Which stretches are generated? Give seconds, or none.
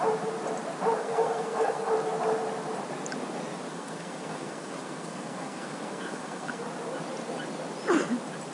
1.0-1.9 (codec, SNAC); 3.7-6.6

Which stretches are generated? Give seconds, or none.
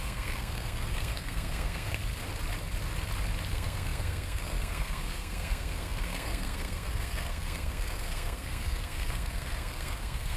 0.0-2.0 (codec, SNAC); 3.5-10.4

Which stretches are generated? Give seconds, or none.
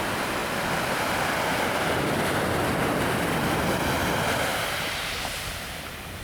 4.5-5.2 (vocoder, BigVGAN v2)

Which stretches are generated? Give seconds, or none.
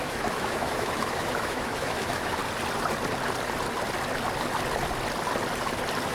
0.0-2.4 (autoencoder, DAC-VAE)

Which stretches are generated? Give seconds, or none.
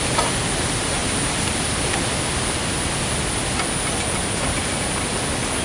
none